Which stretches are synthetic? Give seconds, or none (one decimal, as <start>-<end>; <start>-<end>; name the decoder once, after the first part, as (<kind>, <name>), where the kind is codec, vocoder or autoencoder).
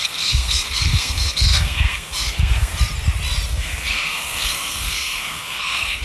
0.0-2.7 (codec, SNAC); 3.5-6.0